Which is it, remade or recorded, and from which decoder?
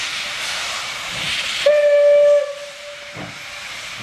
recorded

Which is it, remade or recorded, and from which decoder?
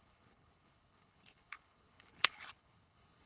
remade, codec, HILCodec